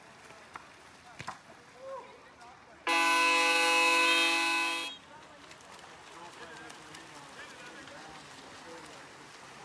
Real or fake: real